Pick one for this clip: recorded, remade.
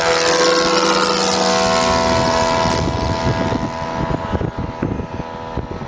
recorded